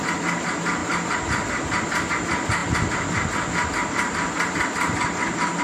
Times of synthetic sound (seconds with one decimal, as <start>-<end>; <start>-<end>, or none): none